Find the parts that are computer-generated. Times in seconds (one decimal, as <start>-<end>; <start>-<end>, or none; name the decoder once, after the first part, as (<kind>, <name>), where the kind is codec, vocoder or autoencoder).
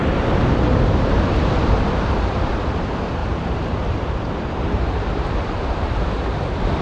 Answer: 0.0-2.6 (vocoder, BigVGAN v2); 3.2-6.1